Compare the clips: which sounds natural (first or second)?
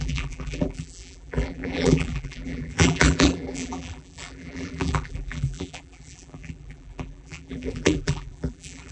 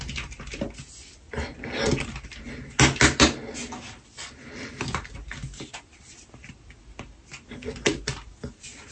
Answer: second